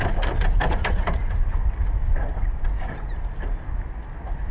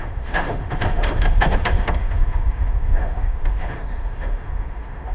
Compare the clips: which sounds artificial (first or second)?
second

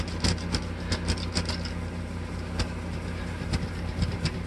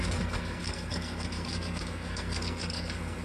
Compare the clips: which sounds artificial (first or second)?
second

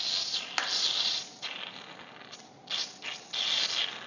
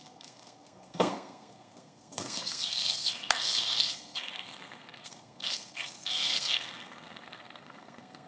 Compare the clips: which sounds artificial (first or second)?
second